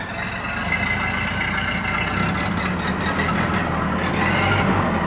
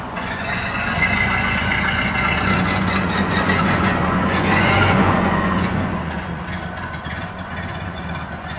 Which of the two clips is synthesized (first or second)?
second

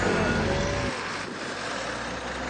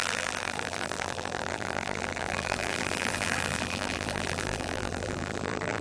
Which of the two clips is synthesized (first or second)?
second